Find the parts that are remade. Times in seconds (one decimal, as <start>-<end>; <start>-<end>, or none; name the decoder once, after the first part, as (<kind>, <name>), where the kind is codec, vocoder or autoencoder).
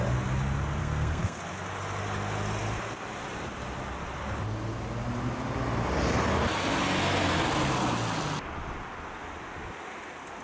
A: 0.8-1.4 (codec, SNAC)